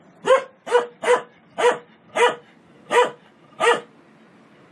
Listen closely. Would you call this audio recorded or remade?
recorded